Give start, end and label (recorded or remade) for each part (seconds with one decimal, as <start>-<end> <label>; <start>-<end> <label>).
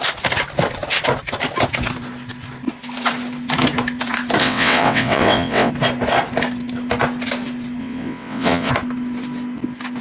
0.0-4.4 recorded; 4.4-5.7 remade; 5.7-7.8 recorded; 7.8-8.7 remade; 8.7-10.0 recorded